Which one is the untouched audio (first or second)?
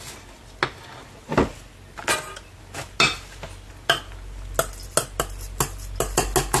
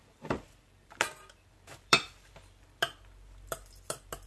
first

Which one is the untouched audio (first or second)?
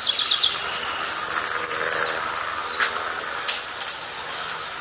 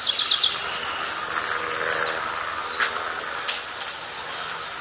second